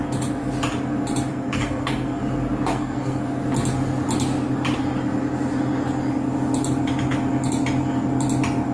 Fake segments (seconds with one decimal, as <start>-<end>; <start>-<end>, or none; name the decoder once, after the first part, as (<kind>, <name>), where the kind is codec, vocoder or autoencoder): 1.3-2.2 (codec, SNAC); 2.7-3.2